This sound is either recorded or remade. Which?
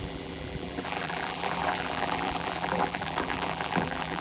remade